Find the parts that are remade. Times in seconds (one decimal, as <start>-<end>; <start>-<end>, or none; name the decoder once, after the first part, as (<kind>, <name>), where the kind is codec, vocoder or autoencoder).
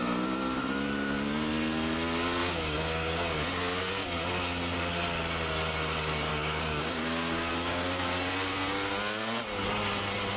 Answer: 2.4-3.6 (codec, DAC); 6.3-7.5